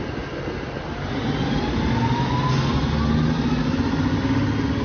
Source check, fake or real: real